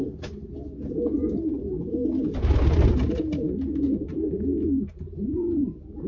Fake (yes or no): no